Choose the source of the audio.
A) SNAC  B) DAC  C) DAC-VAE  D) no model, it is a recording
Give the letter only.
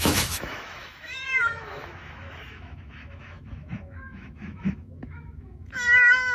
C